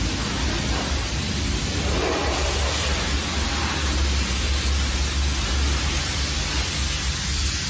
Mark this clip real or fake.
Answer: real